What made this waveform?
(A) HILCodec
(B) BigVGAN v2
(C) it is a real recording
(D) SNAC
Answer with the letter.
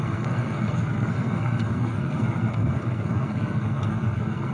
D